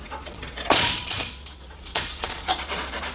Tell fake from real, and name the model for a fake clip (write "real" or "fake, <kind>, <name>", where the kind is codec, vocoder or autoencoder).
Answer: fake, vocoder, Vocos